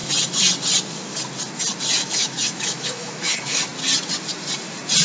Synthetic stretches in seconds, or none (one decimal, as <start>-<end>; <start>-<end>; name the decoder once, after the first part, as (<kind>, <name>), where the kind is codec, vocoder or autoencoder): 2.0-3.6 (autoencoder, DAC-VAE)